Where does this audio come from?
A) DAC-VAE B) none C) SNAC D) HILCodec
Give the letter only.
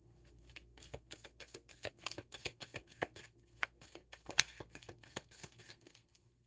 C